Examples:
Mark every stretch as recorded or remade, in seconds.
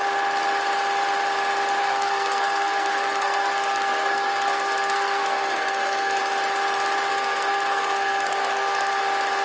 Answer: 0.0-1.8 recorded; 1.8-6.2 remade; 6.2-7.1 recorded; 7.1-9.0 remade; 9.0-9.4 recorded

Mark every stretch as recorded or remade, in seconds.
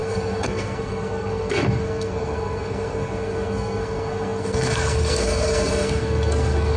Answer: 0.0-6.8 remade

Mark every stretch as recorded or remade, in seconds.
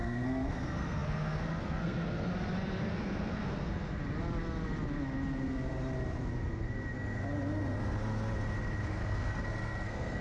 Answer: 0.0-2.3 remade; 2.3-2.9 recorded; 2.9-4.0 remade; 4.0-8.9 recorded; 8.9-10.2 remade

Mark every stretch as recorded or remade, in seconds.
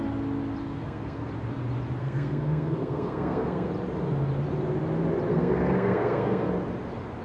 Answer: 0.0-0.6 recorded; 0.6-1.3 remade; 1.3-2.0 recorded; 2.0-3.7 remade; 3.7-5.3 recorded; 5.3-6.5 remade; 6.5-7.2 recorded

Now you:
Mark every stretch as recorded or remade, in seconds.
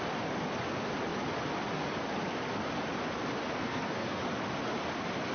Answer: 0.0-3.6 recorded; 3.6-4.2 remade; 4.2-5.3 recorded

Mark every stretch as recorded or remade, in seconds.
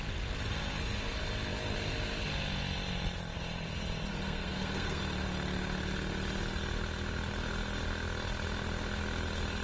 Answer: 0.0-4.1 recorded; 4.1-5.0 remade; 5.0-9.6 recorded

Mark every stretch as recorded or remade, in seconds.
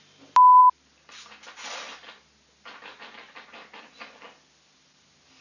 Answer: 0.0-5.4 recorded